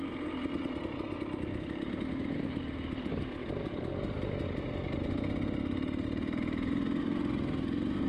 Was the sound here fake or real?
real